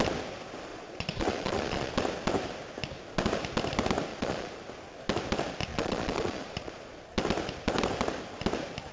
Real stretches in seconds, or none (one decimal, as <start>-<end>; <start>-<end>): 0.0-0.7; 1.9-4.1; 4.6-5.7; 7.0-8.9